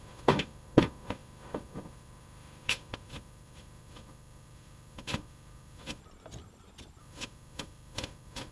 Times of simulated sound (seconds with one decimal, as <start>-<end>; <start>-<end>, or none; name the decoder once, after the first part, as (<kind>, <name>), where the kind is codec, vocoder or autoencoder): 0.0-6.0 (autoencoder, DAC-VAE); 7.0-8.5